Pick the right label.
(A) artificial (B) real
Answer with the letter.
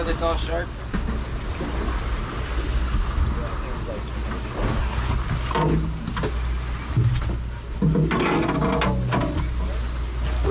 B